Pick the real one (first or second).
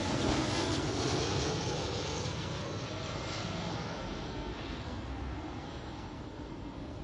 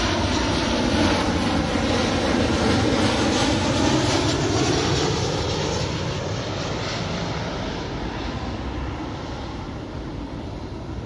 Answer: second